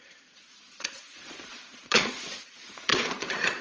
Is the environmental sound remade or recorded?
remade